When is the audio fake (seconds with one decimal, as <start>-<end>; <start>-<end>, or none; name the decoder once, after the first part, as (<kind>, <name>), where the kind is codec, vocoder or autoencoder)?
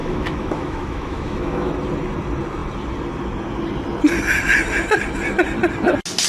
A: 0.0-1.7 (autoencoder, DAC-VAE)